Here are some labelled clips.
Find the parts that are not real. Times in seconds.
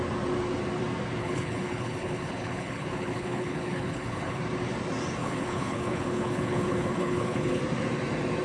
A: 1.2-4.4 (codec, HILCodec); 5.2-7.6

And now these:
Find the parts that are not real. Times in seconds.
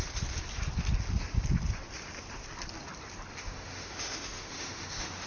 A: 3.4-5.3 (autoencoder, DAC-VAE)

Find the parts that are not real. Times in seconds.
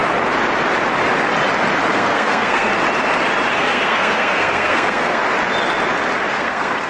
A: 1.9-2.7 (codec, SNAC); 3.5-5.2; 6.3-6.9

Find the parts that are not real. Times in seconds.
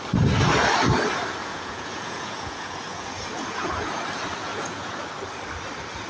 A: 1.4-4.0 (vocoder, Vocos); 4.4-5.0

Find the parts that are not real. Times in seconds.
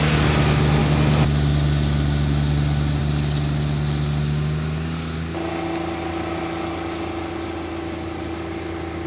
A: none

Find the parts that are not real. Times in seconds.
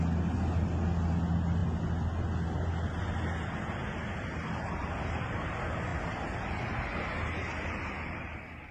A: none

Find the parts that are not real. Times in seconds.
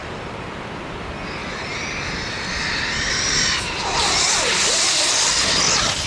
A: none